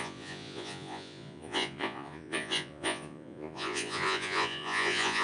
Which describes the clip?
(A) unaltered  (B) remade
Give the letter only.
B